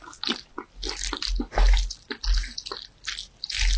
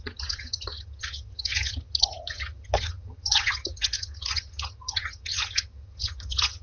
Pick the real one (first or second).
first